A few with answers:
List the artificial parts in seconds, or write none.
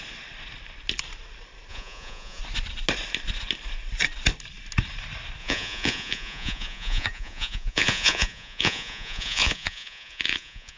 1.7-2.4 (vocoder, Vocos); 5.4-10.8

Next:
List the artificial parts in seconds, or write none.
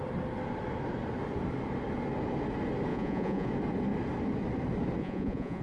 2.9-3.5 (vocoder, Vocos); 5.0-5.6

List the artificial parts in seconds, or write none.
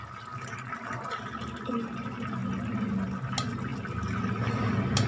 none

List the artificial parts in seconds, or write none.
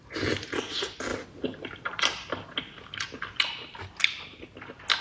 none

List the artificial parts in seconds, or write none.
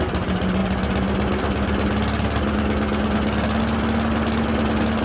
none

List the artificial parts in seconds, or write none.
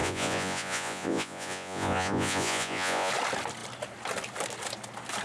0.0-3.1 (vocoder, Vocos)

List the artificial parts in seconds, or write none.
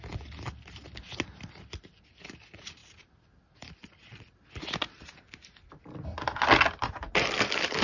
none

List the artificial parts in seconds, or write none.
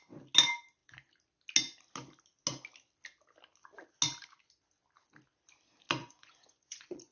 6.0-7.1 (vocoder, Vocos)